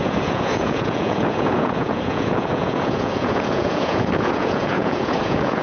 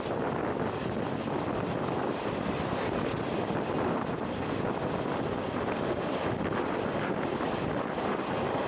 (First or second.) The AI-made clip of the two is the first